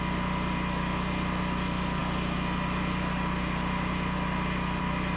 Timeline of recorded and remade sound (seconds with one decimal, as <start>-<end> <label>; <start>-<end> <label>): 0.0-5.2 recorded